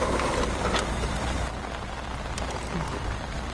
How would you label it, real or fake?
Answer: real